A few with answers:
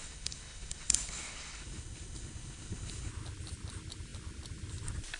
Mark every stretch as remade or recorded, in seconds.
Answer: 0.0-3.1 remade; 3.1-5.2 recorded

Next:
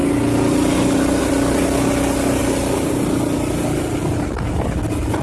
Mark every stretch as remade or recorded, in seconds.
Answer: 0.0-5.2 recorded

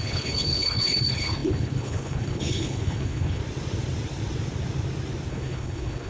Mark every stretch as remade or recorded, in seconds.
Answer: 0.0-3.4 remade; 3.4-5.3 recorded; 5.3-6.1 remade

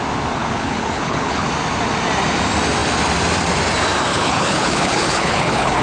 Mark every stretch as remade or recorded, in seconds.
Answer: 0.0-0.4 recorded; 0.4-1.5 remade; 1.5-4.1 recorded; 4.1-5.8 remade

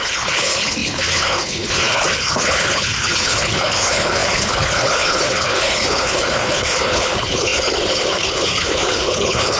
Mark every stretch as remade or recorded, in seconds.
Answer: 0.0-9.6 remade

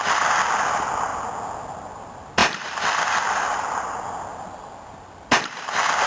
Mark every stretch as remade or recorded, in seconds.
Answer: 0.0-6.1 recorded

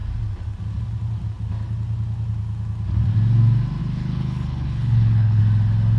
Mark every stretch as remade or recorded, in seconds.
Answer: 0.0-3.8 recorded; 3.8-5.4 remade; 5.4-6.0 recorded

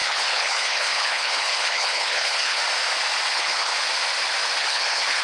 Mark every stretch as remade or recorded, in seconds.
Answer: 0.0-2.6 remade; 2.6-3.3 recorded; 3.3-3.7 remade; 3.7-4.6 recorded; 4.6-5.2 remade